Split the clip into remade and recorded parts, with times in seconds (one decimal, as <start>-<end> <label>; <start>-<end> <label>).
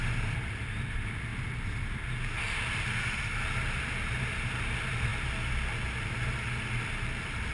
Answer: 0.0-7.5 recorded